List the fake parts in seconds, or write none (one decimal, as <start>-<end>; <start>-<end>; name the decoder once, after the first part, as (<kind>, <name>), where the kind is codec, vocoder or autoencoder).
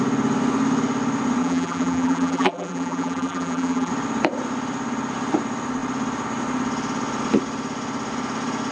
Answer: 1.4-3.9 (vocoder, BigVGAN v2)